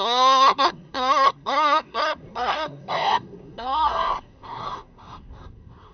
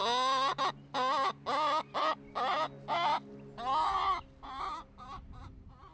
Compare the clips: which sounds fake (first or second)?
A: first